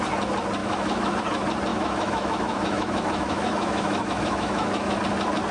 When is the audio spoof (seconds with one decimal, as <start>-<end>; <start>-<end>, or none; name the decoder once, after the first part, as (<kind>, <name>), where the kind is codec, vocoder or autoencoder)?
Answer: 0.6-1.2 (autoencoder, DAC-VAE); 1.7-5.0